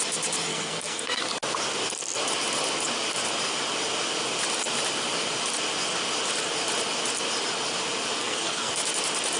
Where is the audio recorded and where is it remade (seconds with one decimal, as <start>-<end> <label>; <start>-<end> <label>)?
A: 0.0-0.5 recorded; 0.5-1.2 remade; 1.2-8.2 recorded; 8.2-8.7 remade; 8.7-9.4 recorded